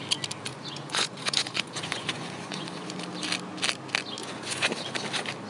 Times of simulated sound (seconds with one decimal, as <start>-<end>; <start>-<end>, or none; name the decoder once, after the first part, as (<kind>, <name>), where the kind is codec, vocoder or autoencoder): 0.5-3.0 (vocoder, Vocos); 4.2-4.7